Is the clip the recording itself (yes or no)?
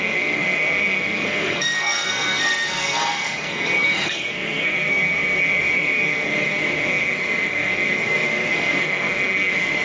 no